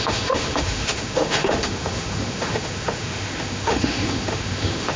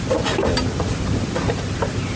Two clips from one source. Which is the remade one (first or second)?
first